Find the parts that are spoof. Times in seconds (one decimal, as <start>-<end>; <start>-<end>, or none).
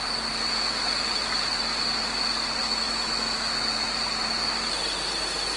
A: 2.6-3.5